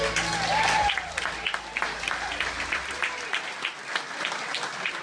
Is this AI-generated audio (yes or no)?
no